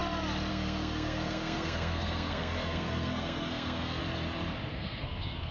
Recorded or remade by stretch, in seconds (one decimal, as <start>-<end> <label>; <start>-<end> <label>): 0.0-0.5 recorded; 0.5-4.0 remade; 4.0-4.7 recorded; 4.7-5.5 remade

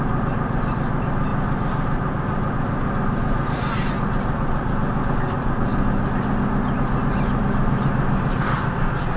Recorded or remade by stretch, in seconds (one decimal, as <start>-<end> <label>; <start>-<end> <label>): 0.0-9.2 recorded

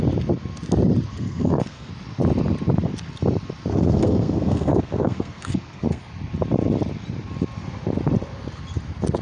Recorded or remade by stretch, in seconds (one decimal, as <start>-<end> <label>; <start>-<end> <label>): 0.0-1.1 recorded; 1.1-1.9 remade; 1.9-3.7 recorded; 3.7-6.0 remade; 6.0-9.2 recorded

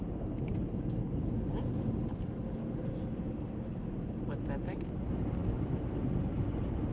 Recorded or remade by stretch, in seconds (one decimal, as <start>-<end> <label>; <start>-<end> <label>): 0.0-6.9 recorded

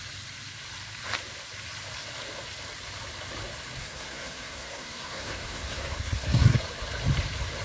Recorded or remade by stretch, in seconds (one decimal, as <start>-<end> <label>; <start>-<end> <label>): 0.0-3.8 recorded; 3.8-6.6 remade; 6.6-7.6 recorded

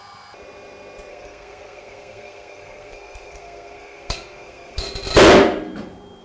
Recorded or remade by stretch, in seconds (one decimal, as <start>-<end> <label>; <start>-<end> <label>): 0.0-1.1 recorded; 1.1-4.8 remade; 4.8-6.2 recorded

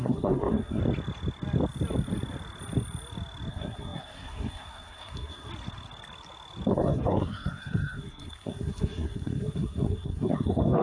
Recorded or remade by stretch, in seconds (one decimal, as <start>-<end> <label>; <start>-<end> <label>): 0.0-0.8 remade; 0.8-3.5 recorded; 3.5-5.5 remade; 5.5-6.7 recorded; 6.7-10.8 remade

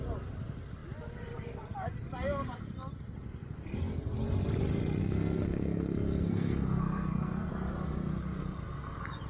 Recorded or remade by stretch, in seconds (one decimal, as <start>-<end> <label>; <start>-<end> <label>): 0.0-5.0 recorded; 5.0-7.5 remade; 7.5-9.3 recorded